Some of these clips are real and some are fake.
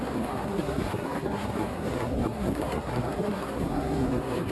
fake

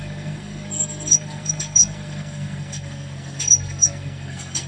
fake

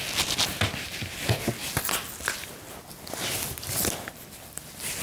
real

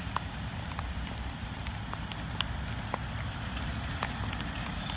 real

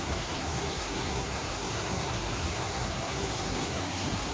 fake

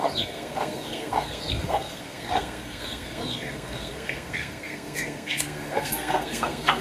fake